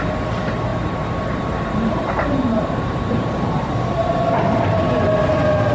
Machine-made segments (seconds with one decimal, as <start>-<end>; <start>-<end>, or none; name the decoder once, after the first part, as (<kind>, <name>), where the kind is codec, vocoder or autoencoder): 0.7-4.1 (vocoder, BigVGAN v2)